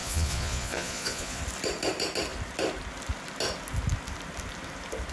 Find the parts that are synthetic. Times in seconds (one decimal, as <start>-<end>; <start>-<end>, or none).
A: 0.0-1.4

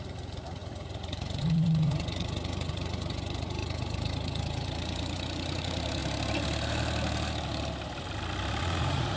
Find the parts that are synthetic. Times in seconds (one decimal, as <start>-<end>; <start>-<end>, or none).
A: 0.0-6.0; 8.6-9.2

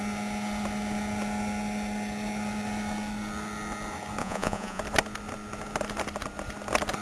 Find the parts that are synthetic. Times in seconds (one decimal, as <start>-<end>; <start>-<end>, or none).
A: 4.2-4.8

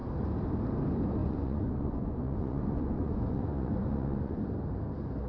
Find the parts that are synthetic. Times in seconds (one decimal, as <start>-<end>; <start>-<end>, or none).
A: 1.2-4.4

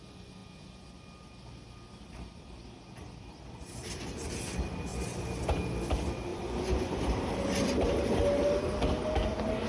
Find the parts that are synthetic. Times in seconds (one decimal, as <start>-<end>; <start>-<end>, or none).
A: 6.3-7.0

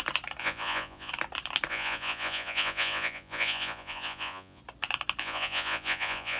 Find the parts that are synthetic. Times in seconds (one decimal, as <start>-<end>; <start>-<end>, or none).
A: 0.4-1.1; 1.7-4.6; 5.2-6.4

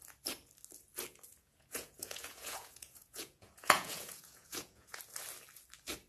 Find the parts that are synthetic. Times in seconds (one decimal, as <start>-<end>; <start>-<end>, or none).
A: 1.3-5.0